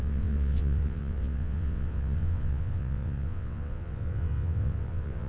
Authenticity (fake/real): fake